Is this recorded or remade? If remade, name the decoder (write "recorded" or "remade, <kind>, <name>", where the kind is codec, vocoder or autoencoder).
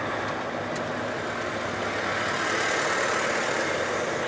recorded